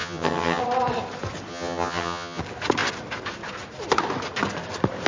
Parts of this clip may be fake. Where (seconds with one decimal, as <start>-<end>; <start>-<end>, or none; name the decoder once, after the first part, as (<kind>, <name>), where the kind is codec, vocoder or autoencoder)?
0.0-0.6 (vocoder, HiFi-GAN); 1.5-2.4